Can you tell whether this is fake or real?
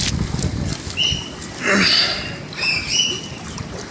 real